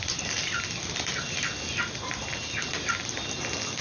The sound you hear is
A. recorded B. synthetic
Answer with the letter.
A